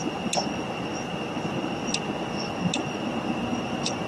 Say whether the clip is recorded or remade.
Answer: recorded